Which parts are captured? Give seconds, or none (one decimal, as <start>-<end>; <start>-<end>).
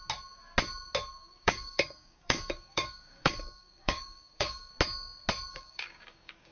0.0-1.2; 4.7-5.5